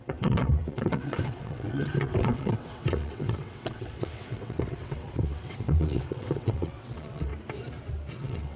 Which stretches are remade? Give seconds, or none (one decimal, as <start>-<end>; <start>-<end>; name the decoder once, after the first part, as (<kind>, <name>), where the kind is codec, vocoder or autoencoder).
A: 0.0-7.3 (vocoder, WaveNeXt); 8.2-8.6

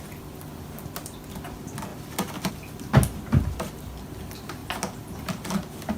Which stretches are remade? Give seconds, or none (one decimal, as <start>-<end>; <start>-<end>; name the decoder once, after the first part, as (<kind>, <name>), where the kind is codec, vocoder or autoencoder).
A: none